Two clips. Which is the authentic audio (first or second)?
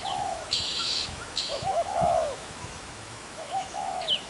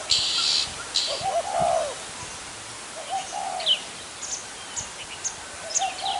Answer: second